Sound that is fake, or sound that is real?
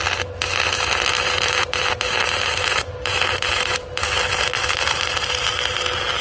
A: real